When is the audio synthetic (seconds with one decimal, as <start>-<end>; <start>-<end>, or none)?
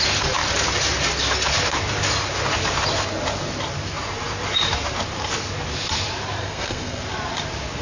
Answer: 6.4-7.0